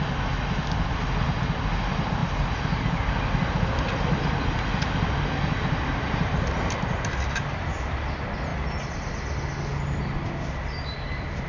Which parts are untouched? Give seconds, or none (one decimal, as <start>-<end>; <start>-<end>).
0.0-11.5